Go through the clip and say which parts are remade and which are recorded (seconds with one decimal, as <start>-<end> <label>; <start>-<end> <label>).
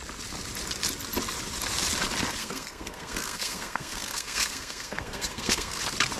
0.0-2.4 recorded; 2.4-5.8 remade; 5.8-6.2 recorded